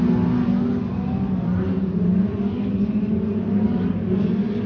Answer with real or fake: real